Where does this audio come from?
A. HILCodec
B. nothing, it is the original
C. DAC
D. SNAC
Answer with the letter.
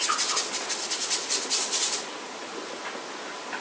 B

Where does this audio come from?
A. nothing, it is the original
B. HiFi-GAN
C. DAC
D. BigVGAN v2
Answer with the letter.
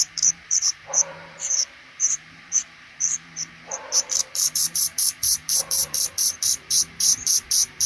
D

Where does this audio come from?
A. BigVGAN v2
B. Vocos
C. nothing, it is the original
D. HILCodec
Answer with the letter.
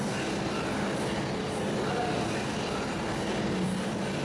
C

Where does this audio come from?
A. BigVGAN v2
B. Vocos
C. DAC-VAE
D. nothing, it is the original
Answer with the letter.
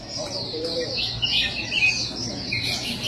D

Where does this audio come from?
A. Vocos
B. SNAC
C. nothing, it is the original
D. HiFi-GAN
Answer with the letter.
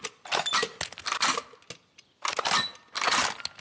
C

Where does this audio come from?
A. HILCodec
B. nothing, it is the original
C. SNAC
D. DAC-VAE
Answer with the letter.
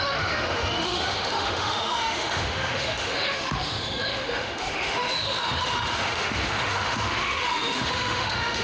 D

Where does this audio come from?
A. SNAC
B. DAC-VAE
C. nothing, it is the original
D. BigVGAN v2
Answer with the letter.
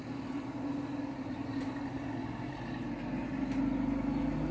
C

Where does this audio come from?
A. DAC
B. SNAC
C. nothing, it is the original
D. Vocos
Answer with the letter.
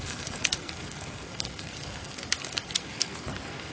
B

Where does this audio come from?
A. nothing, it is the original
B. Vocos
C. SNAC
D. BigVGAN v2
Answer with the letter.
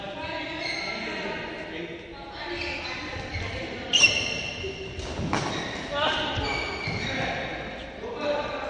A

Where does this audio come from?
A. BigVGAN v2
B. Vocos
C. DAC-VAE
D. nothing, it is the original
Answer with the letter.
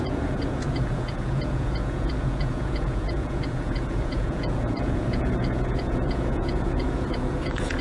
B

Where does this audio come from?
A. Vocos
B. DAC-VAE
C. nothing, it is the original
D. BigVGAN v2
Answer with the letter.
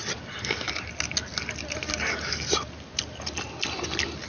C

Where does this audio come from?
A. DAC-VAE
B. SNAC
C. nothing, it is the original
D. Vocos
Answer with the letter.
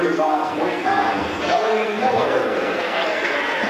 B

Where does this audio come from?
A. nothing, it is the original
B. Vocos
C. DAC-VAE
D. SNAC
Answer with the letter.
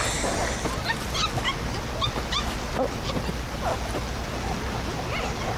A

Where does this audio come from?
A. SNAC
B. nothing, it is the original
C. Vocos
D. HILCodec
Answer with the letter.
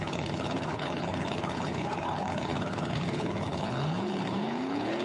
D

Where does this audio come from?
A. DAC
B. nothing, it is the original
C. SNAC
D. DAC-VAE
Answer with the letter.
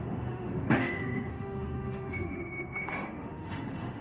D